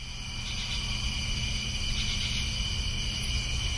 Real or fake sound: real